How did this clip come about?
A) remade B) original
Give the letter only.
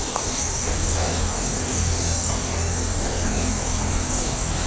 A